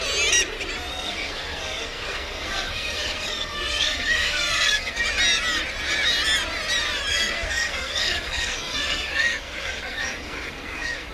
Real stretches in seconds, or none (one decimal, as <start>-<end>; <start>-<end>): 0.0-0.9; 5.0-7.1